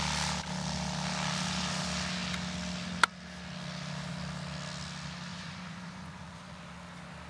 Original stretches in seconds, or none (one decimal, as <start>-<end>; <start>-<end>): 0.0-5.3; 6.6-7.3